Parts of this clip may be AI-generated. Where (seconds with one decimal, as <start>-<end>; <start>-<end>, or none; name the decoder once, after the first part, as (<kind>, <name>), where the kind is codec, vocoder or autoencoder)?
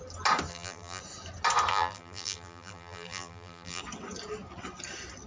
0.5-1.0 (vocoder, BigVGAN v2); 1.7-3.8